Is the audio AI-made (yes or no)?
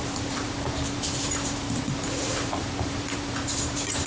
yes